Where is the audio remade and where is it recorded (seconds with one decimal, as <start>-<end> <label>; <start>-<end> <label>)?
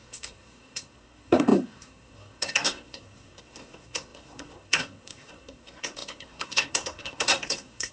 0.0-7.9 remade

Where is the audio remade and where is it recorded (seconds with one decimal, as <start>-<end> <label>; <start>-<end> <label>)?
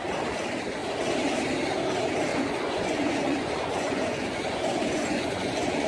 0.0-2.3 recorded; 2.3-5.9 remade